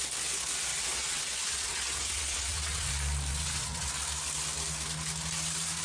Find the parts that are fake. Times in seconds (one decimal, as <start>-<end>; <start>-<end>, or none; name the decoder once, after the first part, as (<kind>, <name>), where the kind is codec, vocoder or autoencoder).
0.7-2.9 (vocoder, WaveNeXt); 3.3-3.9